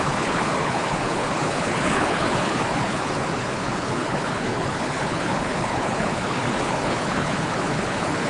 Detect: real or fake fake